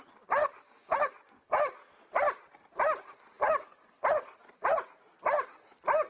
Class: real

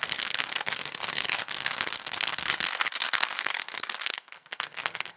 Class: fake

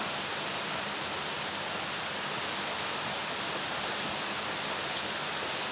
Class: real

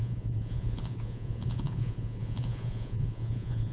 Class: fake